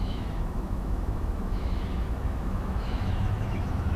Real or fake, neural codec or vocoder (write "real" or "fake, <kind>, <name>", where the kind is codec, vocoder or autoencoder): fake, autoencoder, DAC-VAE